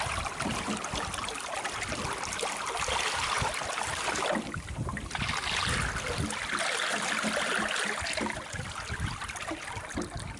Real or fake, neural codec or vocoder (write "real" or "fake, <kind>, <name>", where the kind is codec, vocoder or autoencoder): real